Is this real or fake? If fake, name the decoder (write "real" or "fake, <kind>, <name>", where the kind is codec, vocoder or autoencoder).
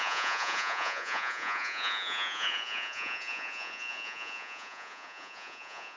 fake, vocoder, Vocos